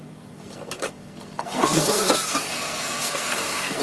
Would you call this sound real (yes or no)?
no